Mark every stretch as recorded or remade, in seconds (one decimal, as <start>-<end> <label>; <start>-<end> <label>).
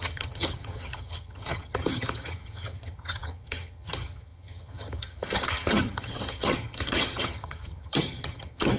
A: 0.0-8.8 remade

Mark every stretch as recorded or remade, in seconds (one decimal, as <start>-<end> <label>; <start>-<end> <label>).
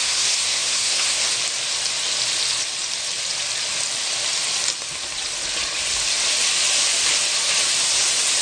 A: 0.0-1.2 remade; 1.2-8.4 recorded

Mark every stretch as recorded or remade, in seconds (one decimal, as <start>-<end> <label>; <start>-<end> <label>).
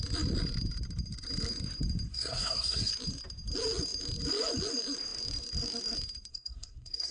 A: 0.0-2.1 recorded; 2.1-2.9 remade; 2.9-6.3 recorded; 6.3-7.1 remade